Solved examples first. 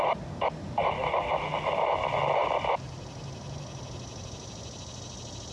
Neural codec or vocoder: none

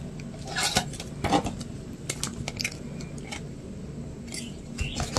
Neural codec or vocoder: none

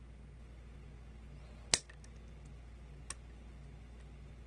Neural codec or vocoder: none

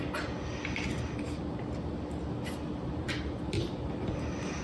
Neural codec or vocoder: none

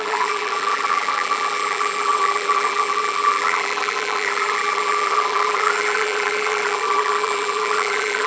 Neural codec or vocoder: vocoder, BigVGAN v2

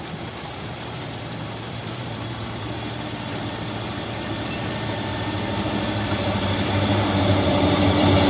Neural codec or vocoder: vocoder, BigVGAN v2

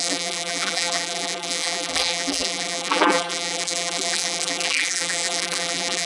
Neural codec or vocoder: vocoder, BigVGAN v2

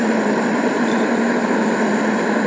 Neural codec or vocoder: vocoder, BigVGAN v2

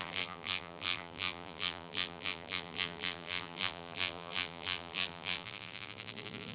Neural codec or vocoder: vocoder, BigVGAN v2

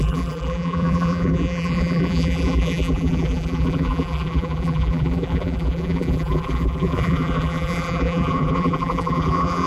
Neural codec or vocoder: vocoder, BigVGAN v2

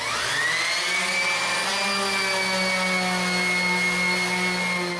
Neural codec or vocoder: none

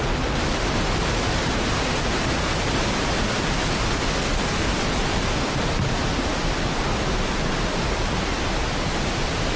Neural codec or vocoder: none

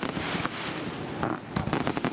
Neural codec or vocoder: none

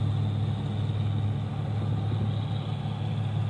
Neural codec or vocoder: none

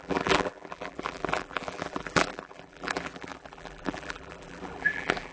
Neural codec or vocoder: vocoder, BigVGAN v2